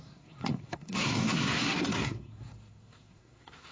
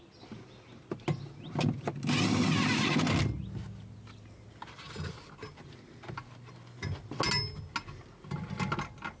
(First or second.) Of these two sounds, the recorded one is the second